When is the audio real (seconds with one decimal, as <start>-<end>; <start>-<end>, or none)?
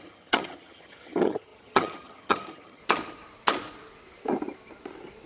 2.8-5.3